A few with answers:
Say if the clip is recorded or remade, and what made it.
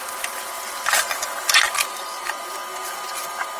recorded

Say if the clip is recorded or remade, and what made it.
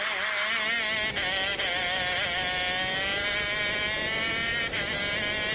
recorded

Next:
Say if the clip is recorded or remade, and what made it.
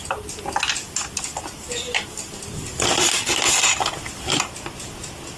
recorded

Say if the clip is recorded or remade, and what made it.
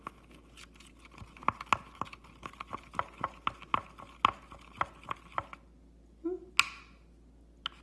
recorded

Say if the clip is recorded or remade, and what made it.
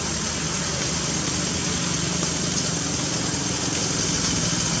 recorded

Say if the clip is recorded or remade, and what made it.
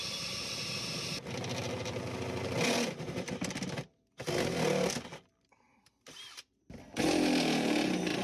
recorded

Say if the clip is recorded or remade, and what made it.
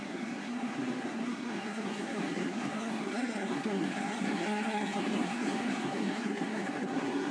remade, codec, SNAC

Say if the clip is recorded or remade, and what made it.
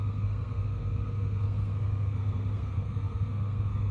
remade, codec, SNAC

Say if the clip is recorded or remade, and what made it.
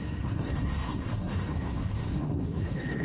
remade, codec, SNAC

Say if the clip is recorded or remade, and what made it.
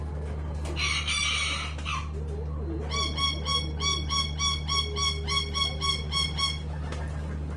recorded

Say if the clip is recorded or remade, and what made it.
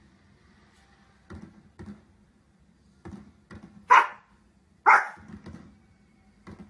recorded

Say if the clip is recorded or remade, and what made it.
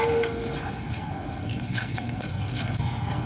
remade, codec, SNAC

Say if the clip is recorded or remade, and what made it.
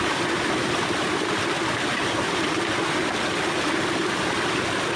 recorded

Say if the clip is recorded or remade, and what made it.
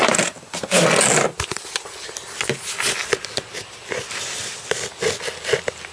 recorded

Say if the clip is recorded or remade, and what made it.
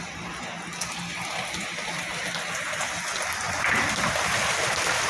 recorded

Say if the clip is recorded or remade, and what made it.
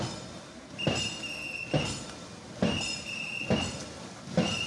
recorded